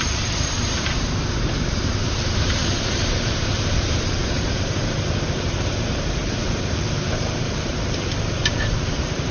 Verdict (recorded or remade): remade